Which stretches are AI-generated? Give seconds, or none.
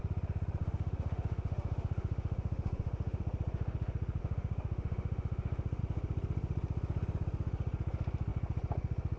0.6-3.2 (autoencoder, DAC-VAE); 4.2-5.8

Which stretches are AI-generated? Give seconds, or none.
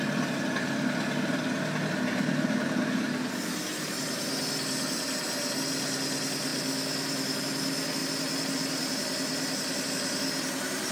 none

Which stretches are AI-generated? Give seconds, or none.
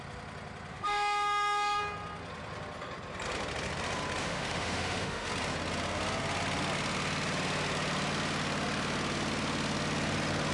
0.7-1.8 (autoencoder, DAC-VAE); 4.2-5.3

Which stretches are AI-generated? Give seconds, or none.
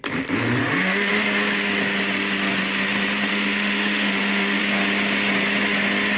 0.6-1.1 (autoencoder, DAC-VAE); 3.3-4.6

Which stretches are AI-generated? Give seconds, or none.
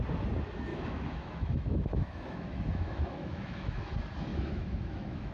0.7-3.9 (autoencoder, DAC-VAE); 4.3-5.3